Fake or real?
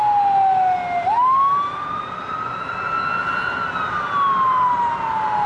real